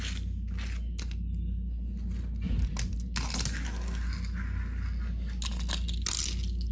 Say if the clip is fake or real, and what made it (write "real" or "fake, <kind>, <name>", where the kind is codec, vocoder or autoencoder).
real